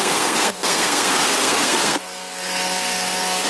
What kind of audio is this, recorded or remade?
remade